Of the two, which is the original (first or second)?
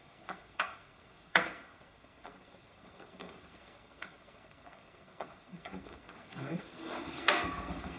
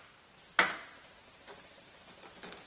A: second